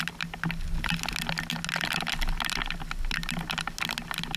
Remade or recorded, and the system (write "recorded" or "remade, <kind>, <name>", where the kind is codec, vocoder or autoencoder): recorded